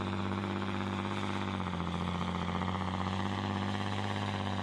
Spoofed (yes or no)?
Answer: yes